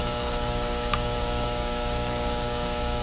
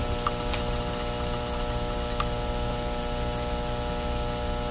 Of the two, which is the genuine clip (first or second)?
second